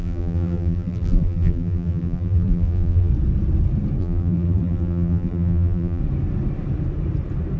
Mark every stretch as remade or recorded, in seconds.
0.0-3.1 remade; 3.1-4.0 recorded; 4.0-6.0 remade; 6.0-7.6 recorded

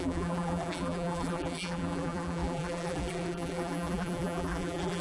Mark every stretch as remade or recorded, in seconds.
0.0-5.0 remade